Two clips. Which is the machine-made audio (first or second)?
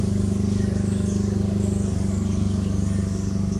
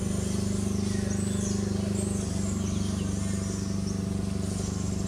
first